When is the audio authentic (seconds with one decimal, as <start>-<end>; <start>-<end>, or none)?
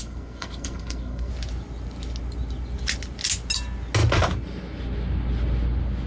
1.3-6.1